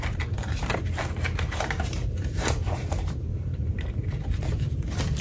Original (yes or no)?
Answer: no